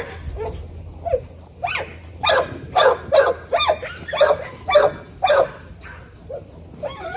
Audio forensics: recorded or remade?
recorded